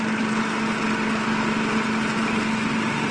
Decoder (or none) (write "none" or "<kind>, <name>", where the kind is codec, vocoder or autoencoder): none